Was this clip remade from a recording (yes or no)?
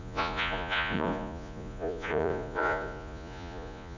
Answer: yes